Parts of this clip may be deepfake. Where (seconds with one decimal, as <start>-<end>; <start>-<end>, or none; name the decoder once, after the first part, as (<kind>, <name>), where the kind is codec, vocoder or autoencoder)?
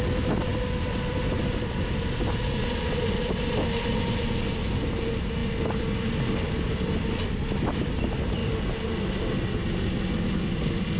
none